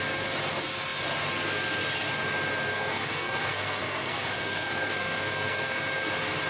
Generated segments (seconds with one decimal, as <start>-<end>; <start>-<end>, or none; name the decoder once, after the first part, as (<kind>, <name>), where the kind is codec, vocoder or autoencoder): 2.7-6.1 (codec, SNAC)